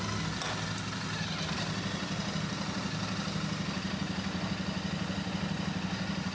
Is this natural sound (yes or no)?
yes